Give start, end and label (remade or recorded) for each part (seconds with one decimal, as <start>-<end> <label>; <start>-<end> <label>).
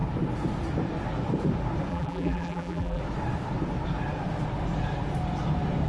0.0-1.9 recorded; 1.9-3.0 remade; 3.0-5.9 recorded